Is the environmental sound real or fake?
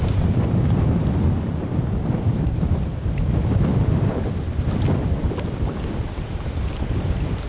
fake